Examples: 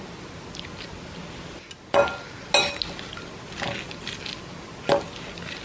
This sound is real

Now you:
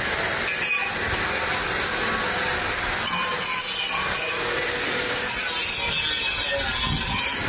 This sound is real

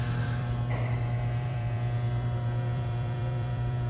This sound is fake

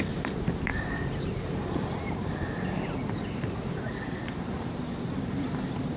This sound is fake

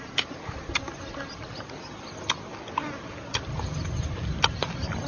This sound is real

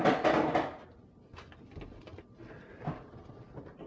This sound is real